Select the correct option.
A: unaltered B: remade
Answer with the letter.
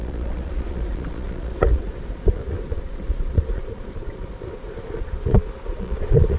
B